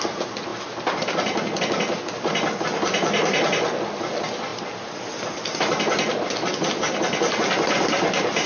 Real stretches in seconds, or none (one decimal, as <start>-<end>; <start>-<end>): 0.0-8.5